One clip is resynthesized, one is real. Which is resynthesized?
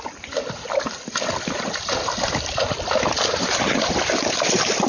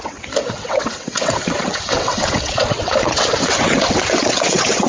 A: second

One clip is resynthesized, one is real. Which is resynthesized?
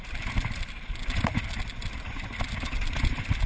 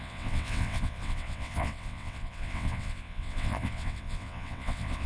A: second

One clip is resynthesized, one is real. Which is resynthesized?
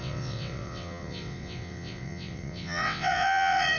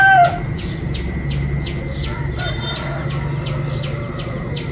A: first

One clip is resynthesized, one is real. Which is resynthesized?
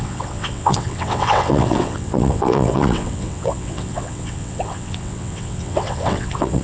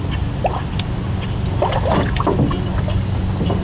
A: first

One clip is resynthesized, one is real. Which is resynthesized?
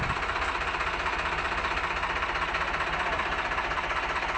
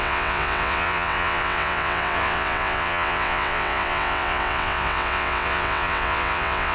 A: second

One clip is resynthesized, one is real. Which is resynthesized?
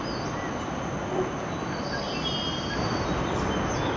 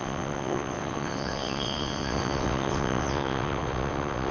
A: second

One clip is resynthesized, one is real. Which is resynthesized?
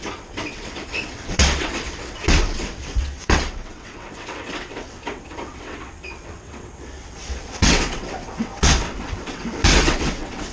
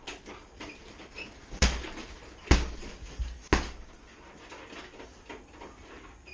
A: first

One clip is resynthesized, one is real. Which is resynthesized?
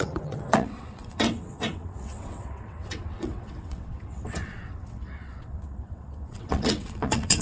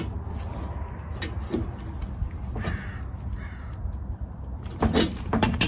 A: first